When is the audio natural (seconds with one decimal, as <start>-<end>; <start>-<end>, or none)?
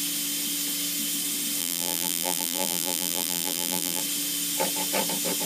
0.0-1.6; 4.0-5.5